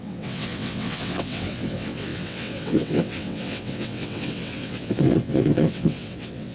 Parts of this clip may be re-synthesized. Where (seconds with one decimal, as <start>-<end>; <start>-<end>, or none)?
0.0-6.5